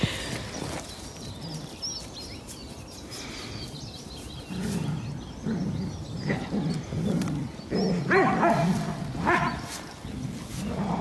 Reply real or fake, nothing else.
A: real